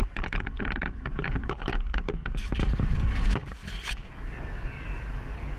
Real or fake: fake